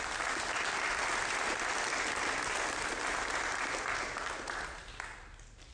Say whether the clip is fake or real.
real